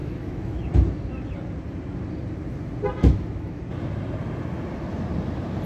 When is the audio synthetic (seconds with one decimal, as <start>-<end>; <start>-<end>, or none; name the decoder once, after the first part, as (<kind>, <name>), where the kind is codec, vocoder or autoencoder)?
0.0-0.6 (autoencoder, DAC-VAE); 3.0-3.6